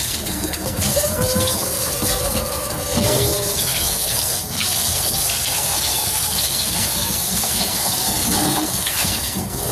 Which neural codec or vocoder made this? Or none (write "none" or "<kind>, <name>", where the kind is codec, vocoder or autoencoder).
codec, SNAC